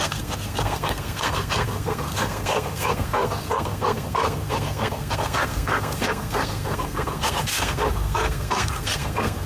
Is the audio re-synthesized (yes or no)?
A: yes